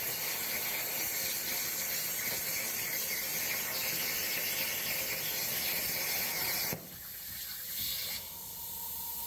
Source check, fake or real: real